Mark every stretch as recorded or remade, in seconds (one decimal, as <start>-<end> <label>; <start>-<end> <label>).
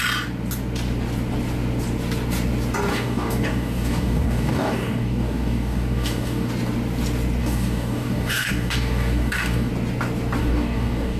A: 0.0-2.9 recorded; 2.9-6.5 remade; 6.5-7.4 recorded; 7.4-9.7 remade; 9.7-10.4 recorded; 10.4-11.2 remade